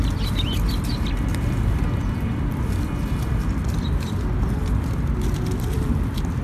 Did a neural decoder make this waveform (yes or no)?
yes